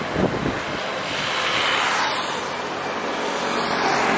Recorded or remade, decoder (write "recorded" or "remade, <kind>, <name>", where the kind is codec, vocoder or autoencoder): recorded